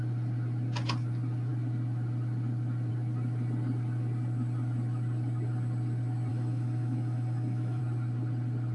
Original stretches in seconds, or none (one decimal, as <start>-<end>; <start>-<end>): 0.0-6.3; 7.8-8.7